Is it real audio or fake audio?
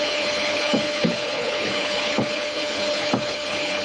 fake